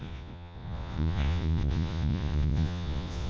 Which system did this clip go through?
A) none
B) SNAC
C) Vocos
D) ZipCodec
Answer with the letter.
C